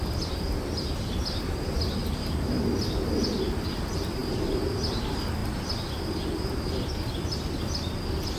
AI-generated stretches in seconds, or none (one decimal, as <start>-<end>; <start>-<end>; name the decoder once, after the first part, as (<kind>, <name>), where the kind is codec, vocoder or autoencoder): none